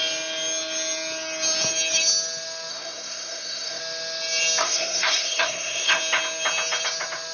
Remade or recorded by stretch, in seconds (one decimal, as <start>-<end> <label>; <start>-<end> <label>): 0.0-2.7 recorded; 2.7-3.8 remade; 3.8-4.6 recorded; 4.6-6.0 remade; 6.0-7.3 recorded